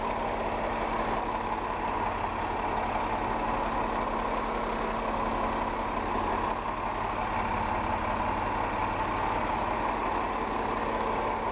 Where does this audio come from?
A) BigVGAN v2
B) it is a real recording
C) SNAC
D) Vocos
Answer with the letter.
B